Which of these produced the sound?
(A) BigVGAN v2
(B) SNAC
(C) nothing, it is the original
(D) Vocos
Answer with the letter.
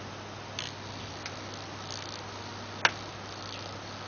C